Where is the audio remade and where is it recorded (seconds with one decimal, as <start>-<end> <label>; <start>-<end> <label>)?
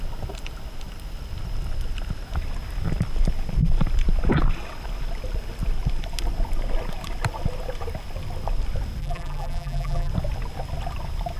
0.0-9.0 recorded; 9.0-10.1 remade; 10.1-11.4 recorded